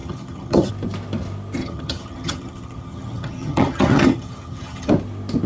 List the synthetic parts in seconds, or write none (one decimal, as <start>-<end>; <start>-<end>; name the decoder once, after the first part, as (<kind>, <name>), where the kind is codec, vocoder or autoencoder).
0.0-0.7 (vocoder, HiFi-GAN); 1.6-4.9